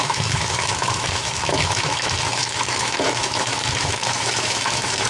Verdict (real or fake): fake